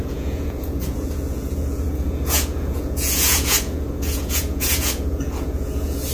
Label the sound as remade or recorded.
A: remade